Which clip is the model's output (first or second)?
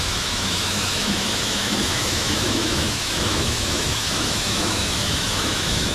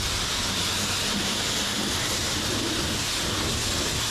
first